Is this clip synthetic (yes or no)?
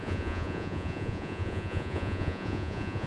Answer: yes